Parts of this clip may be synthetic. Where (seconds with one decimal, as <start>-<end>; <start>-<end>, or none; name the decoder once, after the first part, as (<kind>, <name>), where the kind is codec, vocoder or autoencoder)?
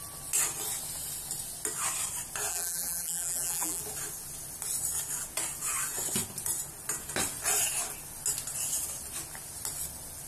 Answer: 2.5-3.8 (vocoder, BigVGAN v2)